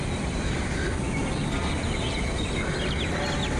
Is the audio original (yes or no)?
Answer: yes